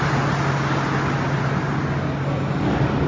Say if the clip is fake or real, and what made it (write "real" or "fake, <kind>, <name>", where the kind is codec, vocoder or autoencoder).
real